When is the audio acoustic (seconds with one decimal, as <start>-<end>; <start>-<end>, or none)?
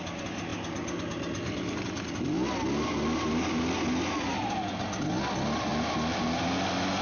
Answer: 0.0-7.0